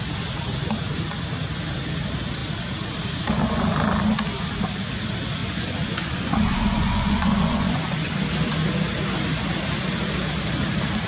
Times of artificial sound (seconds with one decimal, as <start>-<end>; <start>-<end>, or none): 5.4-8.1